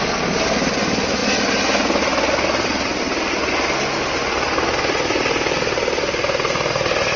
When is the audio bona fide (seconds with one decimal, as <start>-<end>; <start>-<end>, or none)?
0.0-7.2